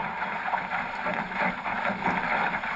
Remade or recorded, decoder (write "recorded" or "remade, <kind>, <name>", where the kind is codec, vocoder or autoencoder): recorded